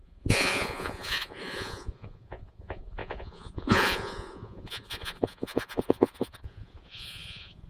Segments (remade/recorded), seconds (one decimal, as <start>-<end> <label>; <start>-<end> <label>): 0.0-7.7 remade